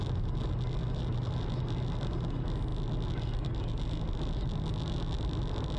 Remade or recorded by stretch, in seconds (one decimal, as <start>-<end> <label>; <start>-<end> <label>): 0.0-5.8 recorded

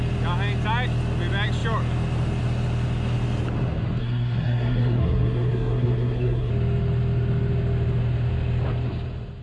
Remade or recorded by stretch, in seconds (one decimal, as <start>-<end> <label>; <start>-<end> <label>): 0.0-4.0 recorded; 4.0-6.5 remade; 6.5-9.4 recorded

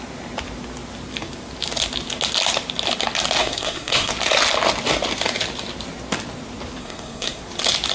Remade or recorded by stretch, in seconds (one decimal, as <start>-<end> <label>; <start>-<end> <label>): 0.0-3.4 recorded; 3.4-4.1 remade; 4.1-6.8 recorded; 6.8-7.4 remade; 7.4-7.9 recorded

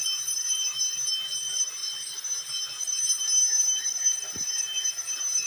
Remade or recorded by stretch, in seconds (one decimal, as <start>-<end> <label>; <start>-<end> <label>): 0.0-5.5 recorded

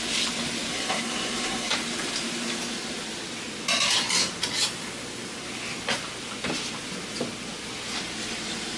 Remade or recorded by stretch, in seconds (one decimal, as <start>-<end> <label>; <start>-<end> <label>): 0.0-0.7 recorded; 0.7-1.7 remade; 1.7-8.8 recorded

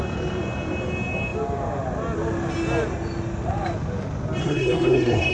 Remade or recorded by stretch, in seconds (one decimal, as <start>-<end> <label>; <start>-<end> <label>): 0.0-4.4 recorded; 4.4-5.3 remade

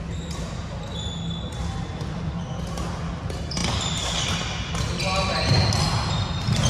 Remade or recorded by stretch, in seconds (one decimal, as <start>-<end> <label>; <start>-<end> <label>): 0.0-6.7 recorded